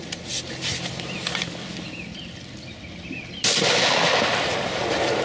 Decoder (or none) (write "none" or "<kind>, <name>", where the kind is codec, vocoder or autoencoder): none